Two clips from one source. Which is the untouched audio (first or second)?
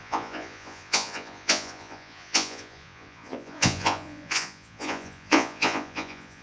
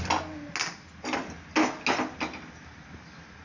second